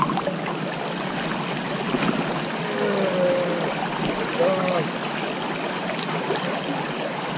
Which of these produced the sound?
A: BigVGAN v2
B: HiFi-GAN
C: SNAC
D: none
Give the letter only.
D